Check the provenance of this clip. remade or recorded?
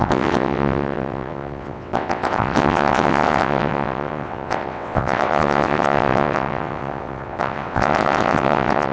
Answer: remade